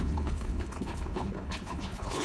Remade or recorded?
remade